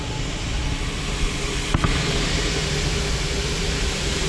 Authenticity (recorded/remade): recorded